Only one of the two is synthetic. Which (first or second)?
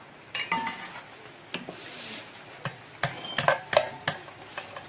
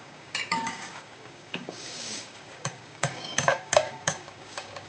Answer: second